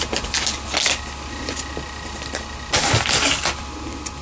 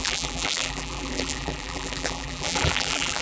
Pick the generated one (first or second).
second